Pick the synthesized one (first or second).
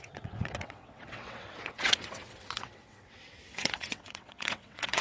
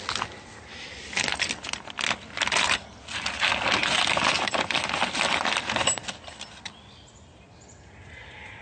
first